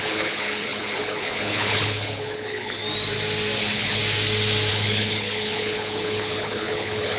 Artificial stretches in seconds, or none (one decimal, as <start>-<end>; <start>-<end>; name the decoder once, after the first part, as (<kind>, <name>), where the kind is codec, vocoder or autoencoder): 0.0-2.8 (codec, HILCodec); 3.6-4.0; 4.7-7.2